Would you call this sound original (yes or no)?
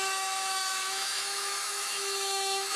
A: no